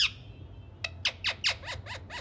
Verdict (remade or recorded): recorded